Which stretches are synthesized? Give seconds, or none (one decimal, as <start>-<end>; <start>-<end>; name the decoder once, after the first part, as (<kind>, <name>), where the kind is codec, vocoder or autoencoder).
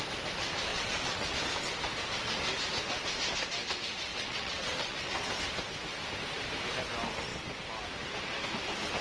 0.7-1.3 (vocoder, WaveNeXt); 4.1-5.1